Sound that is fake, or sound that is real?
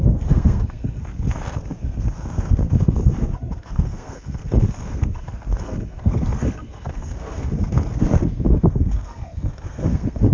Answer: fake